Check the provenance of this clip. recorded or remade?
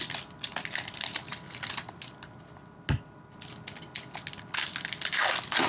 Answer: recorded